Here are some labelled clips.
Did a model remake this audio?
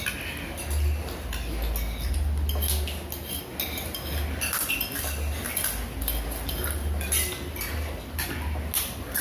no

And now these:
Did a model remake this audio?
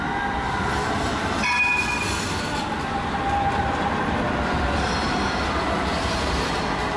no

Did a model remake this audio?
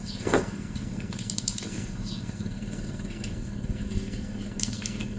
yes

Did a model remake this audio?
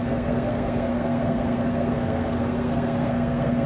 yes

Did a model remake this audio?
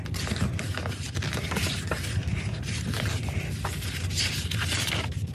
no